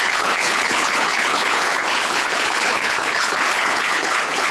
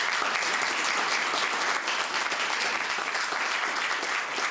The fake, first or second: first